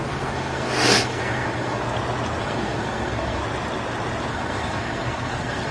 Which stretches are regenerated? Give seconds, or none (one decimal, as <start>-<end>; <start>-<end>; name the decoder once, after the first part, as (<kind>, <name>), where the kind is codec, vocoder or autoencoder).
0.0-1.8 (codec, SNAC); 2.4-3.4; 4.3-5.7